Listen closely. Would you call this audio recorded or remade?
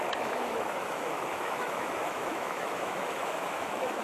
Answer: remade